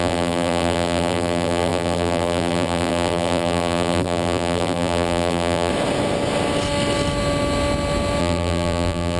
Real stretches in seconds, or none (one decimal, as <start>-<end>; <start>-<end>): 5.7-8.2